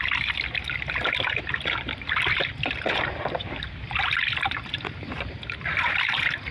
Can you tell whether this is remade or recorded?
recorded